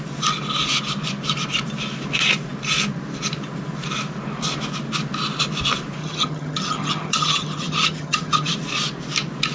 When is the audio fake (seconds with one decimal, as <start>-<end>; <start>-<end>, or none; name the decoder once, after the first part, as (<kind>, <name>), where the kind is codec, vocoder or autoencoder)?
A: 6.0-8.5 (vocoder, HiFi-GAN)